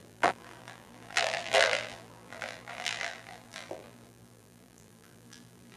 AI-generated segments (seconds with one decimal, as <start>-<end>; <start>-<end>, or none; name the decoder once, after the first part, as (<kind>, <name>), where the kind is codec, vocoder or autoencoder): 0.0-5.8 (vocoder, BigVGAN v2)